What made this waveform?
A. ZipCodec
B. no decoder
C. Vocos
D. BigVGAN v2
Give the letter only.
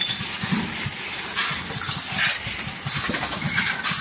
B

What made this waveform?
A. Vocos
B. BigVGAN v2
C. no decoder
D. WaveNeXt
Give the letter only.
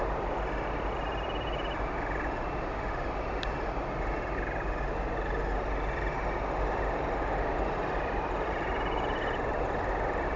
C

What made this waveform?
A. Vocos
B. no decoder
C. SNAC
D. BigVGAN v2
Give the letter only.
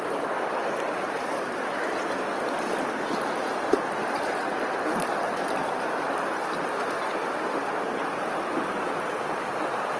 B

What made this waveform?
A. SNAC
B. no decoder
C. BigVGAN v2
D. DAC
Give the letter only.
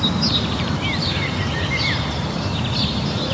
C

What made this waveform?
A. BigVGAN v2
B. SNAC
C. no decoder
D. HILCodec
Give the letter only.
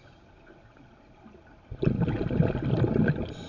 C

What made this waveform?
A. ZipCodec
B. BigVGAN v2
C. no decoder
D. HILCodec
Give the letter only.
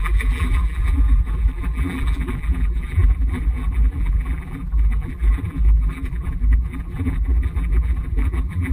B